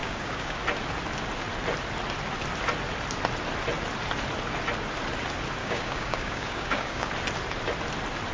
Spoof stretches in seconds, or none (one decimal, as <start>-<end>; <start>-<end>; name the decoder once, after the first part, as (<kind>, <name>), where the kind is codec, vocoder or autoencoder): 0.0-0.6 (codec, DAC); 5.6-7.1